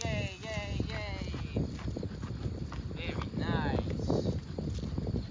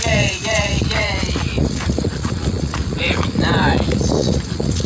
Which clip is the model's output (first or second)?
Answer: second